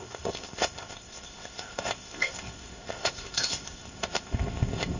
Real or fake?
fake